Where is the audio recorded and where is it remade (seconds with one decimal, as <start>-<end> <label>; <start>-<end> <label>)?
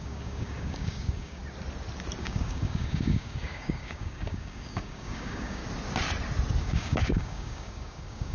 0.0-1.4 remade; 1.4-2.2 recorded; 2.2-5.6 remade; 5.6-6.6 recorded; 6.6-8.3 remade